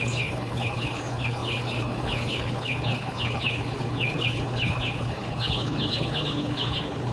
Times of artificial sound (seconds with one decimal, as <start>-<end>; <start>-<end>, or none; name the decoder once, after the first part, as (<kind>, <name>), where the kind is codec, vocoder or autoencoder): 0.0-7.1 (codec, HILCodec)